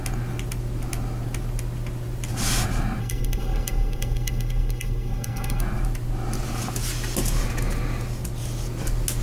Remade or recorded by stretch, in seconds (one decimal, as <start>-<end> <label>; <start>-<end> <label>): 0.0-3.0 recorded; 3.0-5.6 remade; 5.6-9.2 recorded